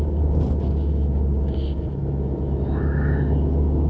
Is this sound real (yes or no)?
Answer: yes